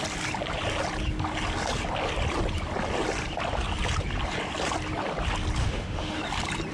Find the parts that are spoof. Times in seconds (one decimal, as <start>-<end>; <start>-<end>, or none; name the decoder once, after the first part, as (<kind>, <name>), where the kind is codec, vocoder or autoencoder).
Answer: 5.6-6.2 (autoencoder, DAC-VAE)